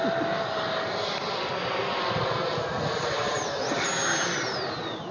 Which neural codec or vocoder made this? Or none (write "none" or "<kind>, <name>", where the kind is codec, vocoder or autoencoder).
none